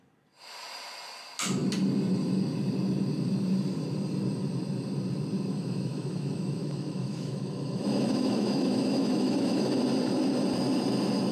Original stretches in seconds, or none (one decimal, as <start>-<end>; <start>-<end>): 0.0-5.5; 9.8-11.3

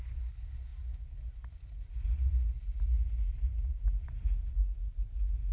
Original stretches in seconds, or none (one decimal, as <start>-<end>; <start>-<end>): 0.0-5.5

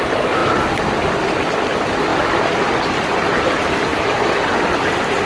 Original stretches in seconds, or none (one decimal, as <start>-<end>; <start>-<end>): 0.0-3.9; 4.4-5.3

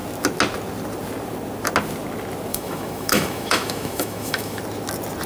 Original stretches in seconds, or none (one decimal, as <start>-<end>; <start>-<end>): 0.0-2.5; 4.6-5.3